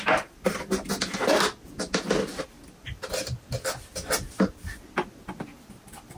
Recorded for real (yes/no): yes